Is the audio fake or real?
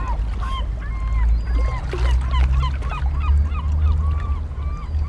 real